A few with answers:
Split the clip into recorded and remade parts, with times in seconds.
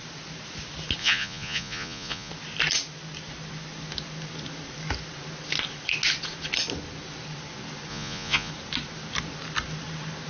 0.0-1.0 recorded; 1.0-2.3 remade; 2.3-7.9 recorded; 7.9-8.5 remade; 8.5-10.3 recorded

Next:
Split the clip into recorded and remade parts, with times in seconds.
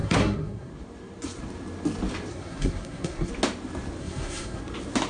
0.0-0.7 remade; 0.7-2.3 recorded; 2.3-3.3 remade; 3.3-4.0 recorded; 4.0-4.6 remade; 4.6-5.1 recorded